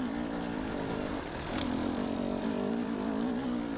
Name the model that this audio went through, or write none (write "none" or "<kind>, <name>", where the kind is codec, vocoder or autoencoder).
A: none